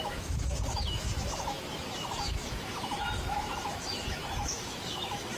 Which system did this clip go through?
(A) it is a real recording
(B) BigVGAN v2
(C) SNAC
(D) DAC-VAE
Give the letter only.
D